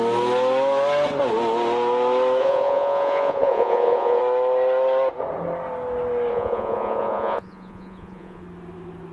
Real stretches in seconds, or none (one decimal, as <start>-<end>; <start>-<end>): 0.0-2.4; 4.2-6.3; 8.4-9.1